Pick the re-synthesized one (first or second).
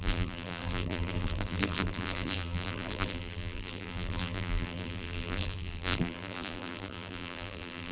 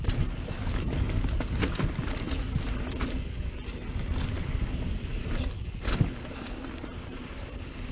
first